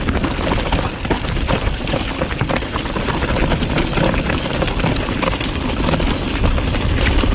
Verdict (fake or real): real